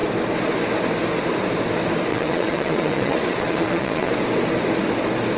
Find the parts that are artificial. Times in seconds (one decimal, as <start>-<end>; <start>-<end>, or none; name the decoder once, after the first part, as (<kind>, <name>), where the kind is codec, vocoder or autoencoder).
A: 2.1-4.1 (vocoder, WaveNeXt)